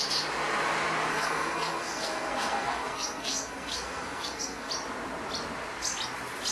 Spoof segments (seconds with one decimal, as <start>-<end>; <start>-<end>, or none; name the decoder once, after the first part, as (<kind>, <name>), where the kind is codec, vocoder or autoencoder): 1.1-4.7 (codec, SNAC)